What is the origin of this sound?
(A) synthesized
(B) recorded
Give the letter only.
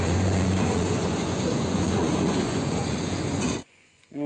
A